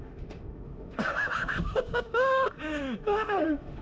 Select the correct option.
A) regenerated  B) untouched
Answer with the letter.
A